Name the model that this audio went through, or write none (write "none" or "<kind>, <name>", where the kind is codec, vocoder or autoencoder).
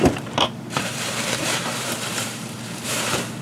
vocoder, BigVGAN v2